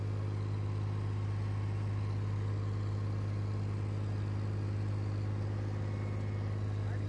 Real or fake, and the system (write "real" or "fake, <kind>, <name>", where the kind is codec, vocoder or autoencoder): real